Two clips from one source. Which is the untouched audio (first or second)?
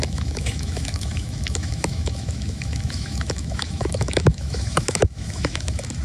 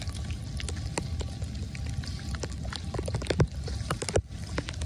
second